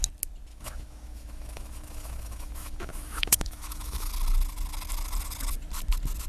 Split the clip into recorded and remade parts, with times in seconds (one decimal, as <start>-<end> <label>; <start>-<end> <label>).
0.0-0.5 recorded; 0.5-4.1 remade; 4.1-6.3 recorded